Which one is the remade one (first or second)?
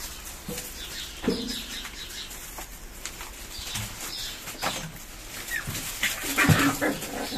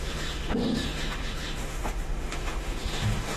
second